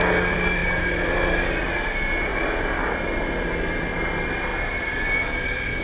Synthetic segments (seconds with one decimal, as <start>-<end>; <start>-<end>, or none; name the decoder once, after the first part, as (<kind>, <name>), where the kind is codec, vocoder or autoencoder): 0.6-1.6 (vocoder, BigVGAN v2); 4.5-5.8